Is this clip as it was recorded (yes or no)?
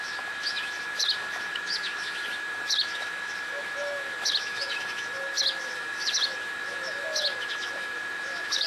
no